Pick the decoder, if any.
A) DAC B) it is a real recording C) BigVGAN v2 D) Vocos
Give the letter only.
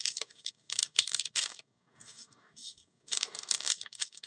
A